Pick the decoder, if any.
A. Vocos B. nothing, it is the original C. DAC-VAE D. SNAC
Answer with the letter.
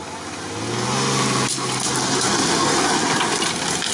B